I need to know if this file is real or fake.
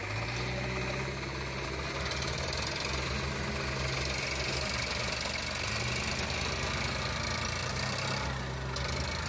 real